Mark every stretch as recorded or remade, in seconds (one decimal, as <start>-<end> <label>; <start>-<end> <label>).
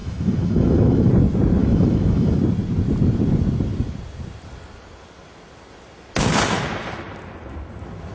0.0-1.1 remade; 1.1-1.6 recorded; 1.6-2.4 remade; 2.4-8.1 recorded